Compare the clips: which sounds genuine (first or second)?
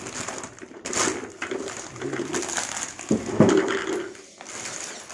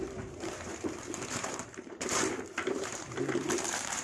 first